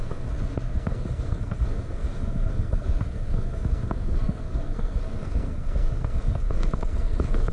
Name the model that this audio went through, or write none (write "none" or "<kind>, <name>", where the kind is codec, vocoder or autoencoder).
codec, SNAC